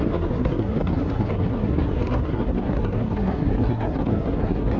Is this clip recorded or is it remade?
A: remade